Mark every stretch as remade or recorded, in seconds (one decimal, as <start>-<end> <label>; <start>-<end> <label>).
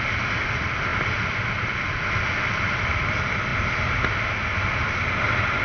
0.0-5.6 recorded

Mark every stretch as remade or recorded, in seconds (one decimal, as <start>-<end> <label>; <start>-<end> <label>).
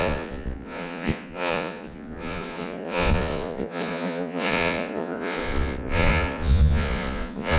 0.0-7.6 remade